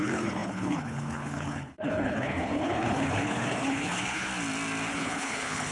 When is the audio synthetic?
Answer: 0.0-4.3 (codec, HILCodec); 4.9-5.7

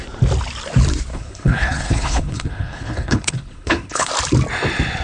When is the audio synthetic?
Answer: 1.1-4.1 (codec, HILCodec)

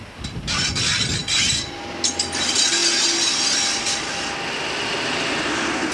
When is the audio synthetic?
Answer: none

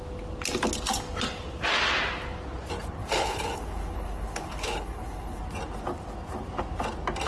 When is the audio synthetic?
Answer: 3.0-5.4 (codec, HILCodec)

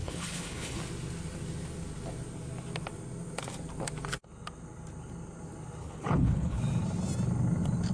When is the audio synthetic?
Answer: 0.0-0.8 (codec, HILCodec); 5.8-6.6

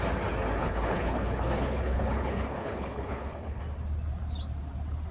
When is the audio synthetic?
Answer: 0.6-3.6 (codec, HILCodec)